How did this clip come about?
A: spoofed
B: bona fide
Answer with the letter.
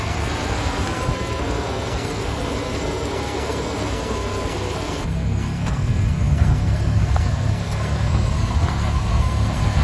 A